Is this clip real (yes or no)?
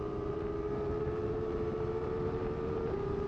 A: no